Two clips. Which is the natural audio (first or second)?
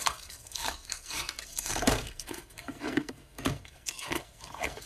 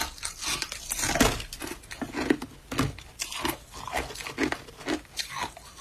second